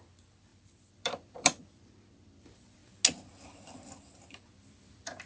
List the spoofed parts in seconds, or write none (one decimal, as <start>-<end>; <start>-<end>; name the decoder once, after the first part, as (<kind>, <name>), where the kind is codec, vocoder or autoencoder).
0.0-2.8 (vocoder, BigVGAN v2); 4.3-5.3